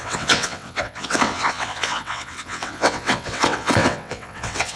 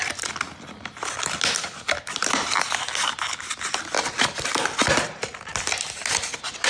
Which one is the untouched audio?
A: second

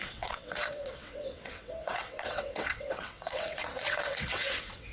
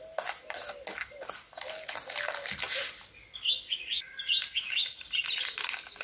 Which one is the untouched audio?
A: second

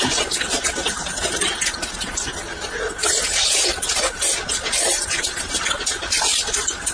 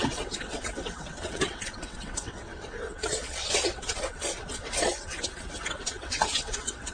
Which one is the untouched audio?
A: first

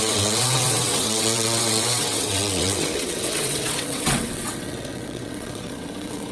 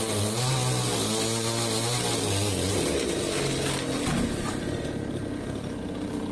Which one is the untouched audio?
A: second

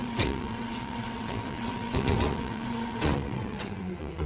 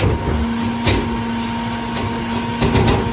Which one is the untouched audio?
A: second